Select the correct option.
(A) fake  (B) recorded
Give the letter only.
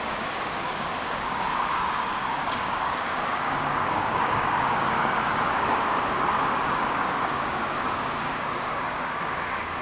A